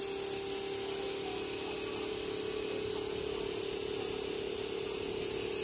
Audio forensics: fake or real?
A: real